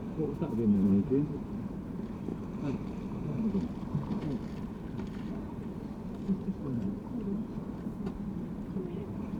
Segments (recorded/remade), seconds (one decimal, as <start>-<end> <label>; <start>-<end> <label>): 0.0-2.3 remade; 2.3-6.6 recorded; 6.6-9.4 remade